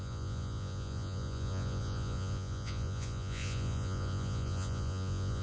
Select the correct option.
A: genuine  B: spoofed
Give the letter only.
B